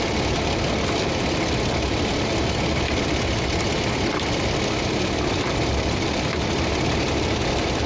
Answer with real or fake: fake